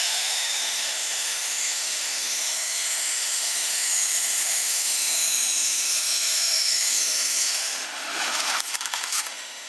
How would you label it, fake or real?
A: fake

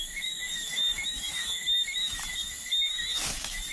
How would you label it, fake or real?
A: fake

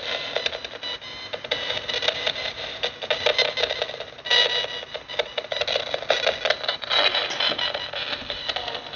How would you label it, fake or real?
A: real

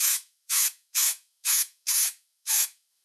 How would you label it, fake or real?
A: fake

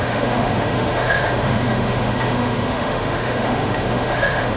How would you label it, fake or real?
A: fake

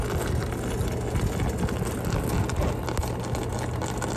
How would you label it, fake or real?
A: real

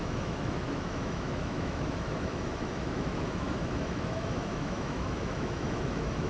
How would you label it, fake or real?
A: fake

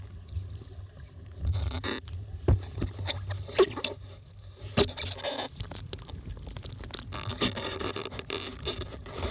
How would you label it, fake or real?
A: real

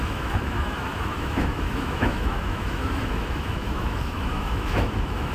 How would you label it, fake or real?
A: fake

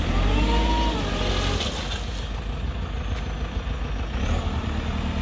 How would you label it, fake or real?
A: real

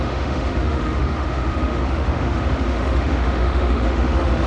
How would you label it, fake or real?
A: fake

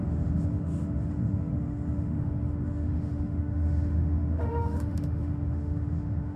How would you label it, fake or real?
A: fake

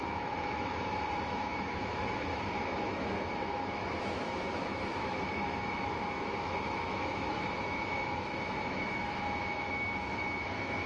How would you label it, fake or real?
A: fake